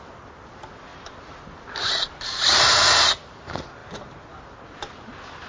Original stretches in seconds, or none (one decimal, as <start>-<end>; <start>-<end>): 0.0-0.9; 2.3-3.8; 4.4-5.5